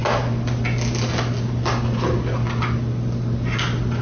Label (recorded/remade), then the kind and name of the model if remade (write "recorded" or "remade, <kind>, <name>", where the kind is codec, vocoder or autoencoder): recorded